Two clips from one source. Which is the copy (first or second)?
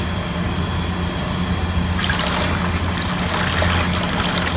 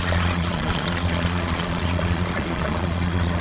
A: second